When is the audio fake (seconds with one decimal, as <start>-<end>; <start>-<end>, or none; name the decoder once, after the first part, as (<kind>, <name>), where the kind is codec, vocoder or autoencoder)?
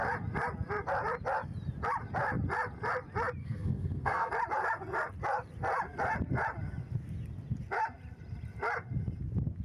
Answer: 3.4-4.3 (codec, SNAC)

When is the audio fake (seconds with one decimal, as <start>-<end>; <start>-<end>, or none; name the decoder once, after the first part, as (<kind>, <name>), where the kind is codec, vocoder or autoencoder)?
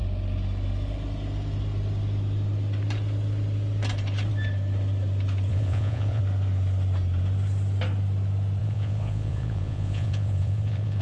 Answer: 5.5-6.2 (vocoder, Vocos); 8.6-11.0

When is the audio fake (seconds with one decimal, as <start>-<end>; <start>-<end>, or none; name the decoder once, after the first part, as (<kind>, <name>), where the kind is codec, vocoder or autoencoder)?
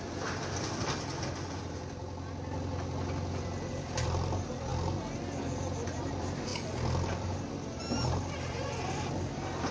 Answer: 0.0-1.1 (vocoder, BigVGAN v2); 3.8-4.7; 6.1-9.7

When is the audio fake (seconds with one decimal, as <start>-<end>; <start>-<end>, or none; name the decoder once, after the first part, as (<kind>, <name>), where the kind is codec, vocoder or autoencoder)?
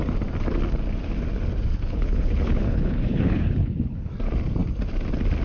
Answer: 1.7-4.1 (codec, HILCodec)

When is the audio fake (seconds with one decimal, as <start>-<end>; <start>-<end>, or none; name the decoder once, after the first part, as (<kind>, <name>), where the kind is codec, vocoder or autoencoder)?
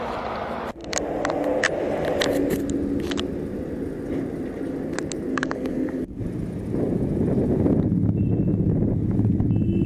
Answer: 5.3-6.2 (codec, DAC)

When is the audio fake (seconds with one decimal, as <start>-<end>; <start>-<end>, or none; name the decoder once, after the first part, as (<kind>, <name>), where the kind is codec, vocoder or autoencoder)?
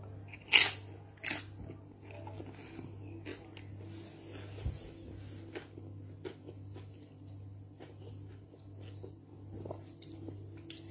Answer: none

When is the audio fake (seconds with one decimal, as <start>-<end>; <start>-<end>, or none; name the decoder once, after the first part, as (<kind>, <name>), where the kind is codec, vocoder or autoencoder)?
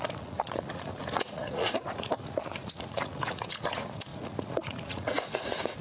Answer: 0.0-5.8 (vocoder, Vocos)